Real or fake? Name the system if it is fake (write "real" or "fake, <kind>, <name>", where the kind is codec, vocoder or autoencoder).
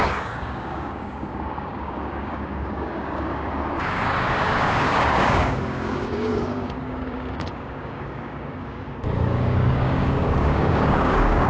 fake, codec, DAC